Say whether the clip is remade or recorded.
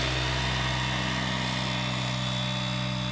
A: recorded